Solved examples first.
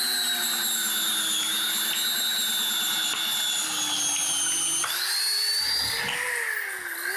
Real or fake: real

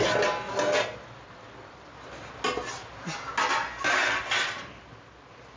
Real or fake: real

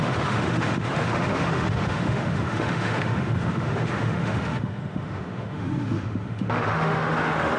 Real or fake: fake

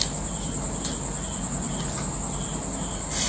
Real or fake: real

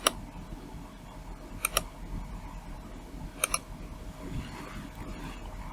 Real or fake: real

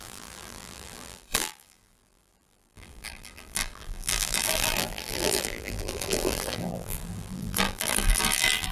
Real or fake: fake